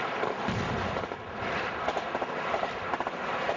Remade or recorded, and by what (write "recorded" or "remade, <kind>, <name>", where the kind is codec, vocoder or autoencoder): remade, vocoder, BigVGAN v2